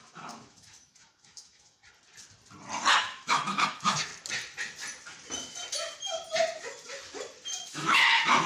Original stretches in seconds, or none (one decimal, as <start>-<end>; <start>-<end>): 1.8-3.0; 4.1-7.7